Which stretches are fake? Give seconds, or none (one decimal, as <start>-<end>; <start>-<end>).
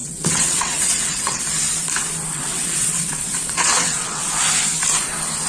0.0-1.4; 2.3-4.3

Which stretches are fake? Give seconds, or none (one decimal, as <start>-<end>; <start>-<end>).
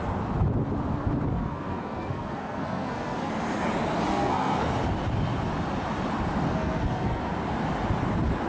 1.3-3.3; 4.1-4.7; 6.5-7.2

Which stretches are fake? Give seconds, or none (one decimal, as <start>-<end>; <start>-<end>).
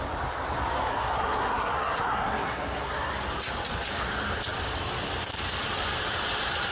0.9-3.1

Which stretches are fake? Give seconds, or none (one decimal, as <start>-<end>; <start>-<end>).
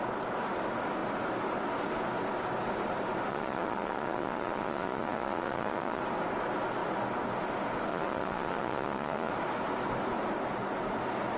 3.3-6.0; 7.9-9.3